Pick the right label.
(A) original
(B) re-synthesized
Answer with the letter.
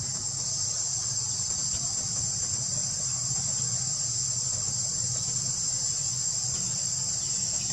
A